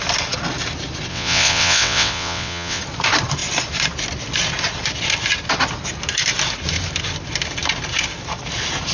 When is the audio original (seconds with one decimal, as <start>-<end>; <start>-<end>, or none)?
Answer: 0.0-1.1; 2.8-8.9